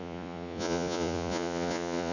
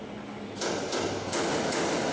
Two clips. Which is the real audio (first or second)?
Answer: second